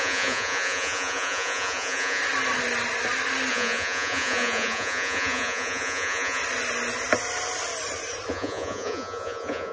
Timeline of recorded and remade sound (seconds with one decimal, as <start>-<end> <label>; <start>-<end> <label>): 0.0-2.2 remade; 2.2-3.5 recorded; 3.5-6.4 remade; 6.4-8.3 recorded; 8.3-9.7 remade